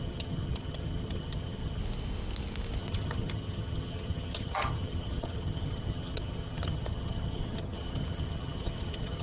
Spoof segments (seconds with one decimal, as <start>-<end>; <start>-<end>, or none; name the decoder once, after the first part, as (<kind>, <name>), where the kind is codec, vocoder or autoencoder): 0.0-1.8 (vocoder, HiFi-GAN); 2.8-9.2